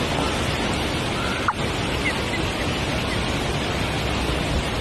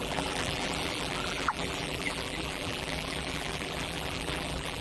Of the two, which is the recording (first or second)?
first